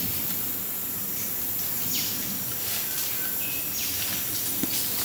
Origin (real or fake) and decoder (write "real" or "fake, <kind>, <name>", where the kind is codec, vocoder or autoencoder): real